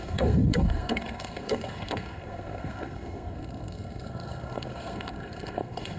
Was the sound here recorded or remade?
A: remade